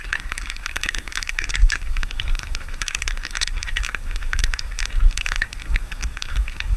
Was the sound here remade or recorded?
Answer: remade